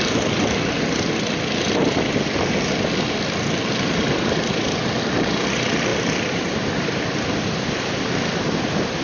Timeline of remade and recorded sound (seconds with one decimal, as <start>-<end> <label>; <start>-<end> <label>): 0.0-9.0 recorded